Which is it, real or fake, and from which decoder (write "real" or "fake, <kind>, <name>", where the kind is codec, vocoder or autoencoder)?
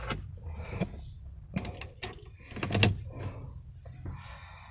real